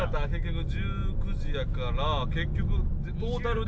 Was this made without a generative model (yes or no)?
yes